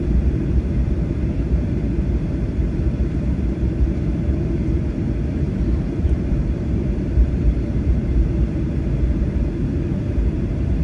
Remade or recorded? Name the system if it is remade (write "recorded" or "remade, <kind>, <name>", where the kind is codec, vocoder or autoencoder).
remade, vocoder, BigVGAN v2